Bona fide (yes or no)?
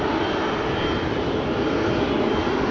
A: yes